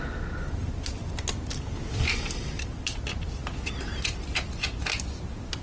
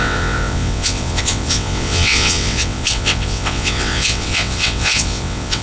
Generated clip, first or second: second